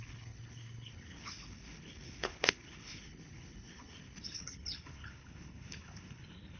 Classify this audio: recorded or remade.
remade